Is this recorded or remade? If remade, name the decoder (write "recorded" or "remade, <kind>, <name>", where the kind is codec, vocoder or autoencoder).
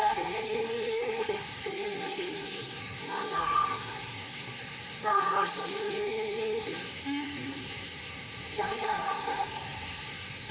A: remade, codec, SNAC